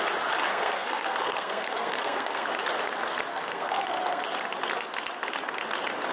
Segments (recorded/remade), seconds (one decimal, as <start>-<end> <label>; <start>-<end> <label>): 0.0-0.5 recorded; 0.5-2.5 remade; 2.5-3.3 recorded; 3.3-4.2 remade; 4.2-6.1 recorded